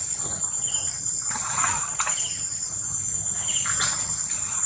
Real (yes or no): yes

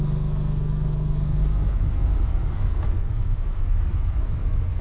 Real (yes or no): no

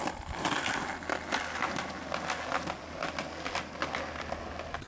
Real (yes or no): yes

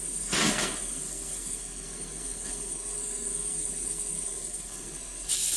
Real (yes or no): no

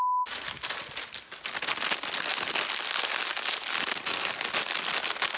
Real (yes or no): yes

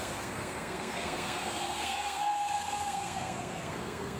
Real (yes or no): no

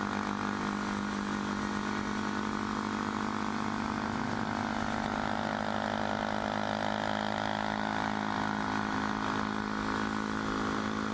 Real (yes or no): yes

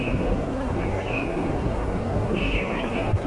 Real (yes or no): no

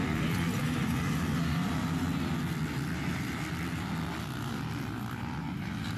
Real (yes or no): yes